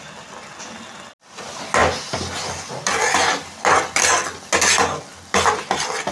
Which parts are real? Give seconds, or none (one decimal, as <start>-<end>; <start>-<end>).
0.0-6.1